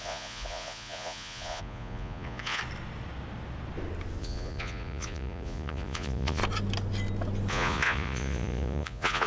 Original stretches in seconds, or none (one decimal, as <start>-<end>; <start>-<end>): 2.6-4.2; 6.4-7.5